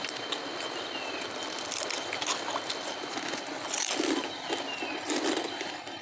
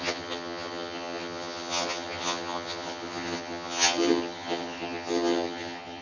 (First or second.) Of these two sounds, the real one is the first